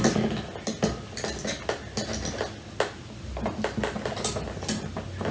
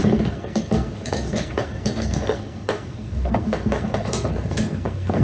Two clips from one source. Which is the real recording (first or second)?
first